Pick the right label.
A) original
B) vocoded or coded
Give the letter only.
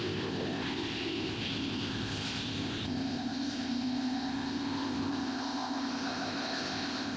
B